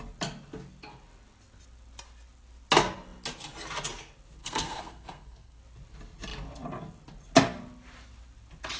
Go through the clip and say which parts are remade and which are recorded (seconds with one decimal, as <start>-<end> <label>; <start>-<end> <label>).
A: 0.0-4.4 recorded; 4.4-5.6 remade; 5.6-8.8 recorded